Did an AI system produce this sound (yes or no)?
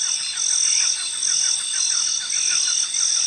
no